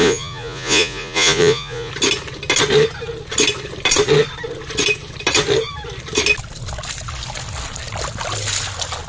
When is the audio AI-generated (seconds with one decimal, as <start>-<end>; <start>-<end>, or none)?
0.0-1.9